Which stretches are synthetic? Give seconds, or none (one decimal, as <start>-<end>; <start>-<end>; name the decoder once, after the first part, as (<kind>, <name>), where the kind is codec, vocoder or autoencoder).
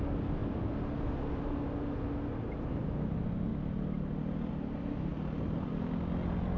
none